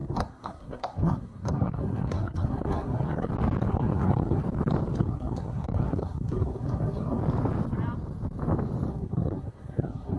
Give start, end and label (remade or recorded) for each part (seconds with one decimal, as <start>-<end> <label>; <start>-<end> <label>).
0.0-3.3 remade; 3.3-3.7 recorded; 3.7-4.4 remade; 4.4-5.0 recorded; 5.0-7.2 remade; 7.2-8.9 recorded; 8.9-10.2 remade